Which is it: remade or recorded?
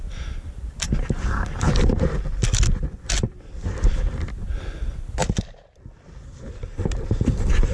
recorded